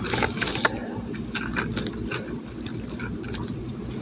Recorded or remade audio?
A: recorded